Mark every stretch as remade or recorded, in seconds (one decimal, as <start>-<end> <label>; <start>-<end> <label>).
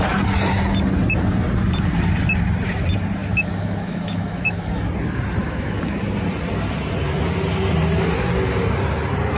0.0-3.2 recorded; 3.2-4.7 remade; 4.7-5.4 recorded; 5.4-6.0 remade; 6.0-9.4 recorded